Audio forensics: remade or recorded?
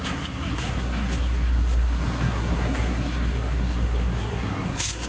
remade